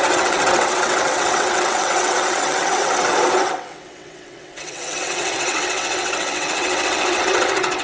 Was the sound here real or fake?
fake